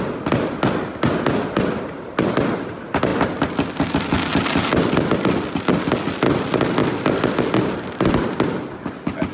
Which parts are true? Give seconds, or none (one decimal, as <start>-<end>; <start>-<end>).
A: 0.0-9.3